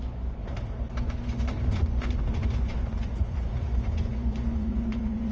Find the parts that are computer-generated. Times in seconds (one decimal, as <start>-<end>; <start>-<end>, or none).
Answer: 0.0-0.4; 1.0-5.3